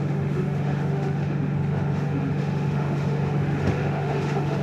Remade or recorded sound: remade